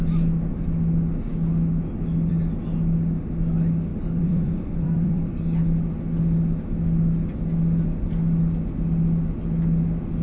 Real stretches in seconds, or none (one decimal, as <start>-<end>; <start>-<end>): 0.0-3.9; 5.3-10.2